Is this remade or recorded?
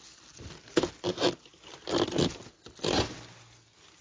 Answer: recorded